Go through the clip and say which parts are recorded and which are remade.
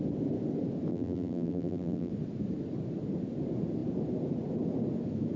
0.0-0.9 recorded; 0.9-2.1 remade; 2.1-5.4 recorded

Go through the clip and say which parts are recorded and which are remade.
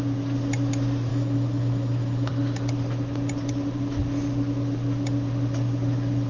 0.0-1.1 recorded; 1.1-2.3 remade; 2.3-6.3 recorded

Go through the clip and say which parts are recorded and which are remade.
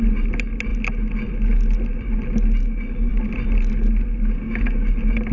0.0-5.3 recorded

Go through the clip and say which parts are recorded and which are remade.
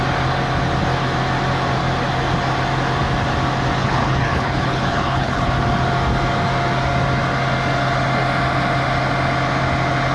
0.0-3.8 recorded; 3.8-5.5 remade; 5.5-10.1 recorded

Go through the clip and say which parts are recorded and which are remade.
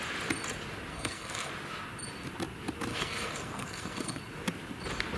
0.0-0.9 recorded; 0.9-1.5 remade; 1.5-2.9 recorded; 2.9-4.2 remade; 4.2-5.2 recorded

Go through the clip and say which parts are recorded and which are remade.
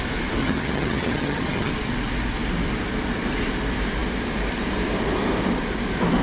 0.0-0.4 recorded; 0.4-1.7 remade; 1.7-6.2 recorded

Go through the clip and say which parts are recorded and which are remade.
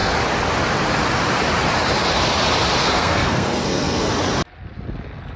0.0-2.8 recorded; 2.8-4.1 remade; 4.1-5.4 recorded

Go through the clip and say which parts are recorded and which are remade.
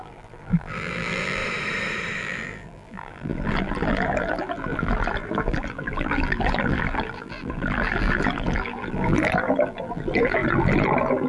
0.0-1.4 remade; 1.4-2.2 recorded; 2.2-11.3 remade